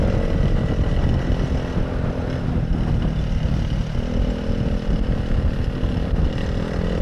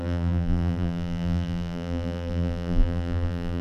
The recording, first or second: first